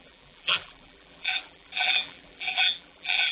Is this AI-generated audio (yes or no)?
yes